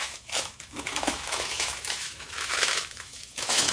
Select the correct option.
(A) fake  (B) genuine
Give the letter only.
A